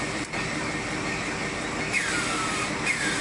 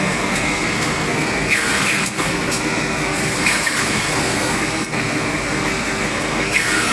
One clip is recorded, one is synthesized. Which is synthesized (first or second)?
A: second